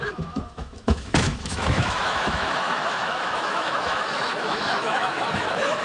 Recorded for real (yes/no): no